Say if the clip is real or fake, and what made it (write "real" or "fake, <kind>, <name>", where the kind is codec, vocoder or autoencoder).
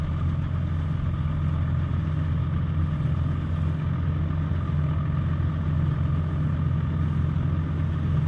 real